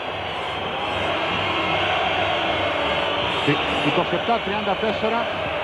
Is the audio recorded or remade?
recorded